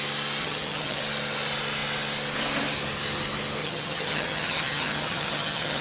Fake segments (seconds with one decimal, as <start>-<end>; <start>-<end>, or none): 0.4-1.0; 3.6-5.8